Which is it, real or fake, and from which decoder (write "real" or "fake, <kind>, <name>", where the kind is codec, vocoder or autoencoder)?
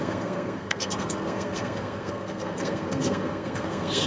fake, codec, SNAC